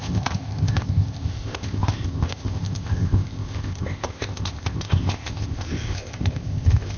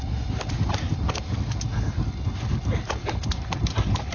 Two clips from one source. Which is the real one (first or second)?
second